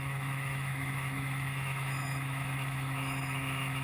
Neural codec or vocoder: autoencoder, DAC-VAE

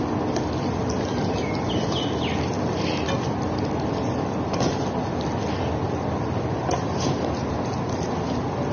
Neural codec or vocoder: none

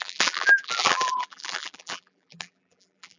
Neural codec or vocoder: vocoder, BigVGAN v2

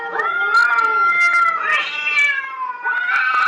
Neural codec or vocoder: none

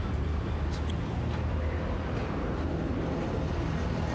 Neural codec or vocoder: none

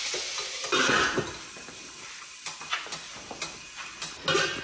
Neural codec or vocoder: none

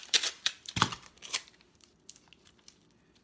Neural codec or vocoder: none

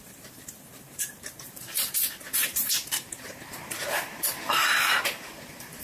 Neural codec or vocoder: vocoder, BigVGAN v2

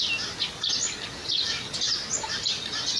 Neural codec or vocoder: none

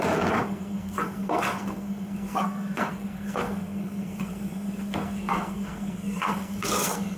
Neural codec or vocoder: codec, SNAC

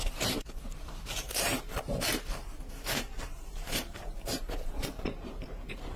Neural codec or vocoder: vocoder, BigVGAN v2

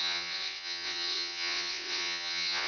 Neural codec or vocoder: vocoder, WaveNeXt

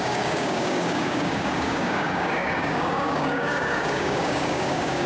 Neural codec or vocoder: codec, DAC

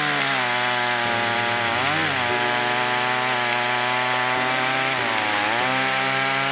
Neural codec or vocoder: none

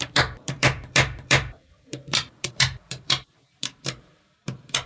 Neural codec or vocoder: vocoder, BigVGAN v2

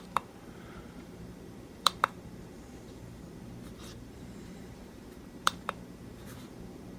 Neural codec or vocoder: vocoder, BigVGAN v2